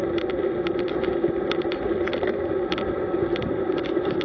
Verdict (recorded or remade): recorded